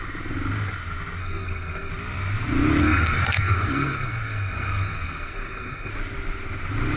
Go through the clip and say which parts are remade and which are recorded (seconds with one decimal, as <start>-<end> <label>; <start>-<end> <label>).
0.0-1.2 recorded; 1.2-1.9 remade; 1.9-2.8 recorded; 2.8-5.9 remade; 5.9-7.0 recorded